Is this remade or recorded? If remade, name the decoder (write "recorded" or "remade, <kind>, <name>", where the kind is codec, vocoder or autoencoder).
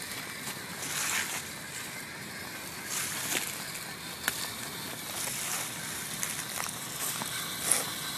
recorded